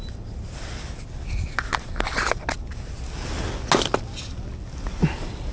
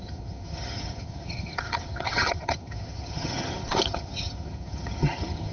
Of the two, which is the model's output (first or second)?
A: second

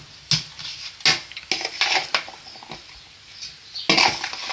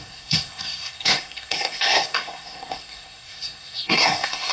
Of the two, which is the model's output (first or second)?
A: second